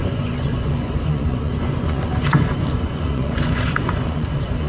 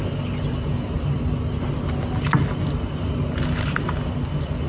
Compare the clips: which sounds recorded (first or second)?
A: second